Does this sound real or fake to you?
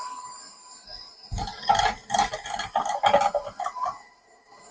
real